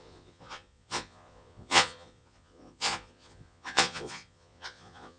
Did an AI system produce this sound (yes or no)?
yes